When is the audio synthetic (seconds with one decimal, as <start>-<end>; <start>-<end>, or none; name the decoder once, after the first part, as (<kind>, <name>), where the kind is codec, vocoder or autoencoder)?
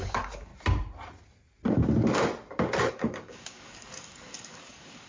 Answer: 0.0-0.5 (codec, DAC); 2.9-5.1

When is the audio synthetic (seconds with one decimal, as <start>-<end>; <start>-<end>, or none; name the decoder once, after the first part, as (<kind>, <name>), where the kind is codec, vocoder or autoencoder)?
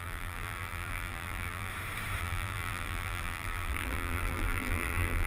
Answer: 0.0-1.7 (vocoder, BigVGAN v2); 2.2-5.3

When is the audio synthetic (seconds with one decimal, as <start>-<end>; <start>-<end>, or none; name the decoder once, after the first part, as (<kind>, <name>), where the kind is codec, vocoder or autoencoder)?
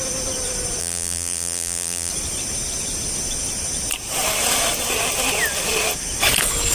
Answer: 0.8-2.1 (vocoder, BigVGAN v2)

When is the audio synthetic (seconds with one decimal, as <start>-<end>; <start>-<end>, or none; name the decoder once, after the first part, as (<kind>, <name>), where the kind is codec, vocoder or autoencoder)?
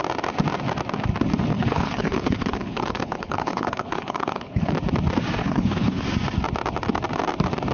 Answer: 1.5-4.7 (codec, HILCodec); 5.4-6.0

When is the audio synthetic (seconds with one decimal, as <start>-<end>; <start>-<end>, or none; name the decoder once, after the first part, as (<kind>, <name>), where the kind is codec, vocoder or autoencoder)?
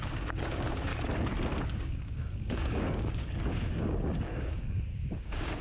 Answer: 0.0-0.9 (codec, DAC); 1.6-5.6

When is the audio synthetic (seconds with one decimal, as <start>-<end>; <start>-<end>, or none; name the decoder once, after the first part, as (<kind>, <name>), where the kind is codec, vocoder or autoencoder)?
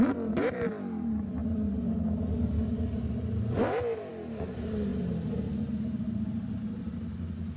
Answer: none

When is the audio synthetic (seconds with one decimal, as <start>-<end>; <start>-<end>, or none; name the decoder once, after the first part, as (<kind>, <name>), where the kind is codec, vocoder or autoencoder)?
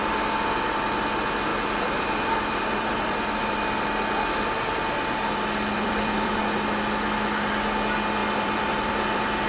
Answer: 1.5-6.4 (vocoder, BigVGAN v2); 8.2-9.5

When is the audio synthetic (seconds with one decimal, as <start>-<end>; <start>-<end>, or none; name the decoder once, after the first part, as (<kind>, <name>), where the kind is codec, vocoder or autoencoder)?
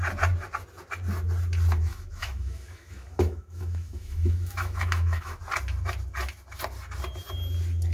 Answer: 1.9-5.4 (autoencoder, DAC-VAE)